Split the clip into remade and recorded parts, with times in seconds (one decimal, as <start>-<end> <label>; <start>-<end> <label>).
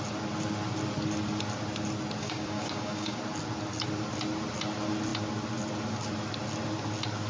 0.0-2.2 recorded; 2.2-3.2 remade; 3.2-7.3 recorded